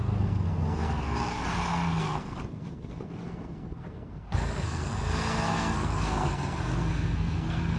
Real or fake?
fake